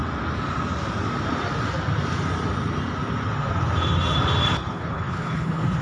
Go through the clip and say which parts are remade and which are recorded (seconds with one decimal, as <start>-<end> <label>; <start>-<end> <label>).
0.0-4.7 recorded; 4.7-5.8 remade